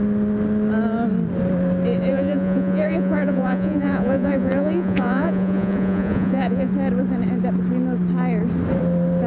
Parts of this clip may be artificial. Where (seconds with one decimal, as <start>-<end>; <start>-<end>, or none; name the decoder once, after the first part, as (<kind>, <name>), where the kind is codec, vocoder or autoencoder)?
2.1-6.7 (vocoder, Vocos)

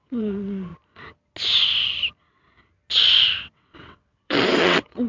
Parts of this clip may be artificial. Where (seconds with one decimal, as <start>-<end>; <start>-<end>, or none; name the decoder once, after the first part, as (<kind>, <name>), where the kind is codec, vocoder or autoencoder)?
0.0-0.7 (vocoder, WaveNeXt); 3.4-5.1

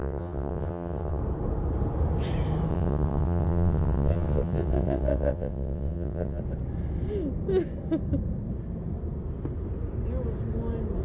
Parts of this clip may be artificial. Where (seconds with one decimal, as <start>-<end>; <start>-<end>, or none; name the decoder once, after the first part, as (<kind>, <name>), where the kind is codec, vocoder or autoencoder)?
0.0-1.2 (vocoder, WaveNeXt); 2.7-6.4

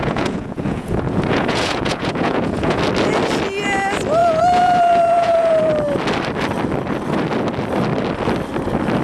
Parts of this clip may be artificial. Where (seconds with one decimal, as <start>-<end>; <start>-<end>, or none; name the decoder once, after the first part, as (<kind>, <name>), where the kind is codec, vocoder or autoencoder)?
0.0-2.8 (vocoder, Vocos); 4.2-5.7

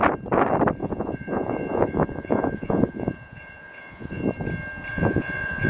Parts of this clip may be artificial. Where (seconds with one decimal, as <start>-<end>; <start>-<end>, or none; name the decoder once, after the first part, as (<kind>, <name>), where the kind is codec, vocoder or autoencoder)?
0.8-4.2 (vocoder, Vocos); 4.9-5.7

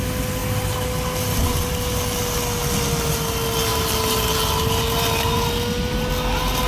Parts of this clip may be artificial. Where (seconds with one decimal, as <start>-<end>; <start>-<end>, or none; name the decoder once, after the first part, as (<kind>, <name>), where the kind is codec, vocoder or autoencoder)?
none